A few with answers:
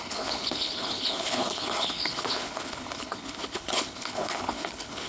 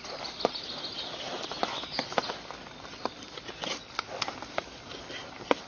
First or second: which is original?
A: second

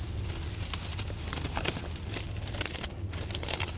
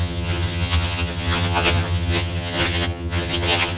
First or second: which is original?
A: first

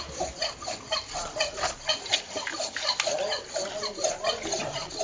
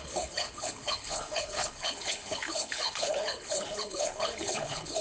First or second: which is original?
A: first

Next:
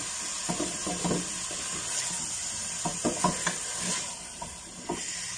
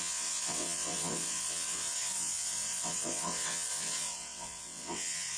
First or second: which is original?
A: first